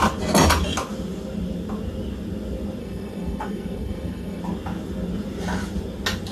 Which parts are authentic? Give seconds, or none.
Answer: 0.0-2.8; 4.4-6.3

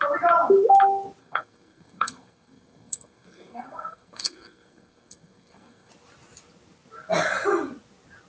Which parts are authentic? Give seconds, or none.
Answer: 0.0-1.2; 5.9-8.3

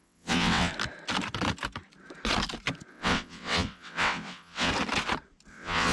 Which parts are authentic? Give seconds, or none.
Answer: 0.7-2.9; 4.7-5.5

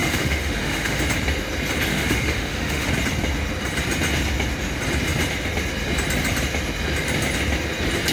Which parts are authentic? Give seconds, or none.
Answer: 1.0-1.9; 2.9-8.1

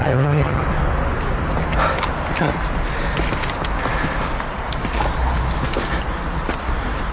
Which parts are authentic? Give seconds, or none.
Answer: 0.6-7.1